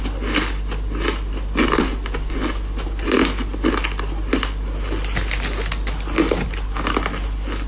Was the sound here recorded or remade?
recorded